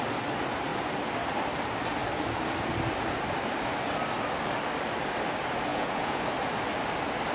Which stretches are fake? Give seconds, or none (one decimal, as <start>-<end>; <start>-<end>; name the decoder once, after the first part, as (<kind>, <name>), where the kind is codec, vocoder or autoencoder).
5.7-6.2 (vocoder, Vocos)